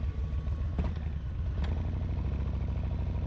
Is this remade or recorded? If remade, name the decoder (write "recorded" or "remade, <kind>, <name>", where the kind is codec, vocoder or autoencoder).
recorded